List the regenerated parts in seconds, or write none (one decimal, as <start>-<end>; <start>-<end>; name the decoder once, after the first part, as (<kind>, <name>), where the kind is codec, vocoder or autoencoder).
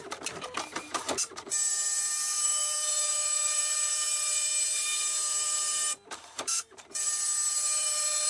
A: 0.0-8.3 (vocoder, BigVGAN v2)